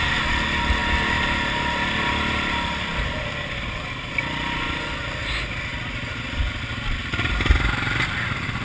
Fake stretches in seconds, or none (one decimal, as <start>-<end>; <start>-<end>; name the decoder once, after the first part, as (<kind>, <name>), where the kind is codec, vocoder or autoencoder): none